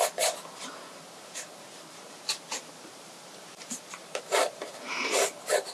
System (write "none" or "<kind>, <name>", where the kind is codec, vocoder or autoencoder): vocoder, BigVGAN v2